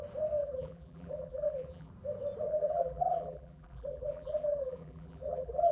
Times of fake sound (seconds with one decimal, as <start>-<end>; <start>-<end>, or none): 0.4-1.9; 2.5-5.7